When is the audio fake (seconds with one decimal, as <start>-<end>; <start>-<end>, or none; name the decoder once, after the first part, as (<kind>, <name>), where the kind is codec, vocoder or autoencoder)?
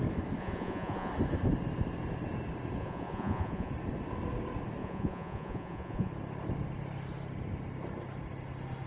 0.4-1.1 (vocoder, Vocos); 2.8-3.7; 4.8-6.1